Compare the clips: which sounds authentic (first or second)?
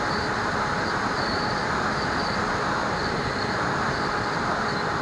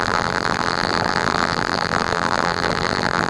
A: first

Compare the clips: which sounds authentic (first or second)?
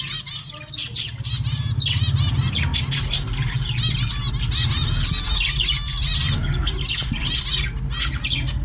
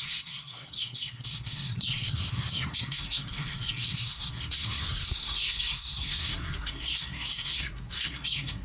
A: first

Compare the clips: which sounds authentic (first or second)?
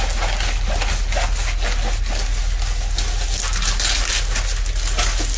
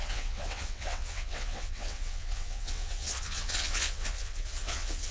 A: first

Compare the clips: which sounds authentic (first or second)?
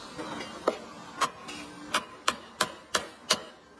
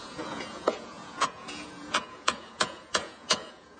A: first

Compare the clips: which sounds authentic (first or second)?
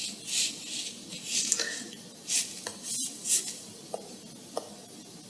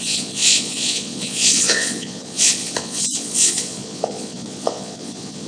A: first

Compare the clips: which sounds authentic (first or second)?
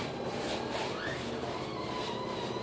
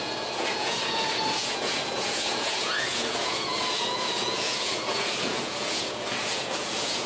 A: first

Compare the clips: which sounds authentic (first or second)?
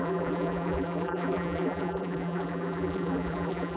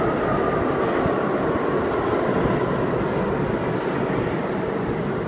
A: second